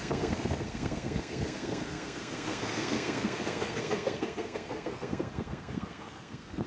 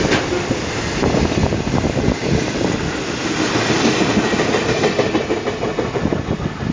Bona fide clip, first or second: second